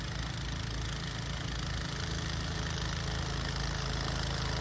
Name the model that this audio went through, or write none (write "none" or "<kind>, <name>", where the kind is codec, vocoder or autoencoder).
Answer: none